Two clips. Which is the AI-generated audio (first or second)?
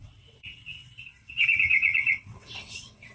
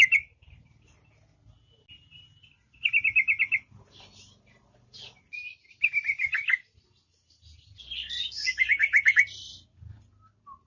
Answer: first